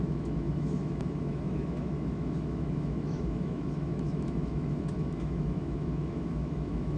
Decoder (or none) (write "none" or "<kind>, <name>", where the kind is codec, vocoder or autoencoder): autoencoder, DAC-VAE